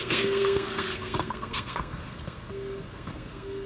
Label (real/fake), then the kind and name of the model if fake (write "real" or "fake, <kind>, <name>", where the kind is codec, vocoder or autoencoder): fake, codec, SNAC